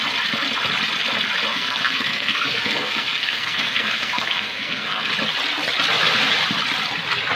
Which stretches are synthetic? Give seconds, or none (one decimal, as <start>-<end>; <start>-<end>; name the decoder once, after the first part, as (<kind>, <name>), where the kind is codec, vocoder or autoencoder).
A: 1.5-5.1 (codec, SNAC)